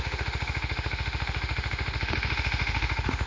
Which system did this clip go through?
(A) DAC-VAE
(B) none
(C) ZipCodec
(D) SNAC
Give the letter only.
A